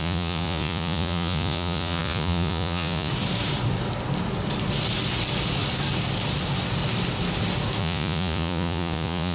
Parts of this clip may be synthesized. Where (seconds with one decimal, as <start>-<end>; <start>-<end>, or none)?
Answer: 0.0-3.1; 7.8-9.3